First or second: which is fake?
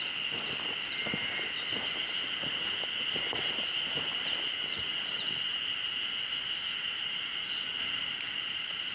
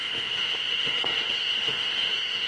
second